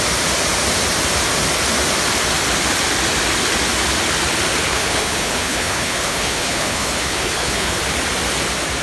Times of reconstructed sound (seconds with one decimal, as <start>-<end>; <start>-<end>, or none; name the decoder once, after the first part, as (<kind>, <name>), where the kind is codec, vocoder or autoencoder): 4.7-7.8 (codec, HILCodec)